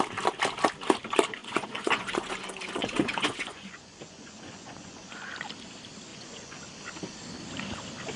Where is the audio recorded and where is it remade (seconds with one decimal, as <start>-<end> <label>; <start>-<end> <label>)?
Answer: 0.0-1.4 recorded; 1.4-2.3 remade; 2.3-2.8 recorded; 2.8-5.3 remade; 5.3-6.1 recorded; 6.1-6.6 remade; 6.6-8.2 recorded